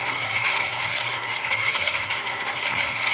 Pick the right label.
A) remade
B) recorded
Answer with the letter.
A